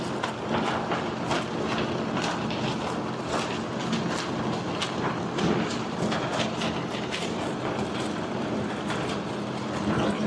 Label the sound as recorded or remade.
recorded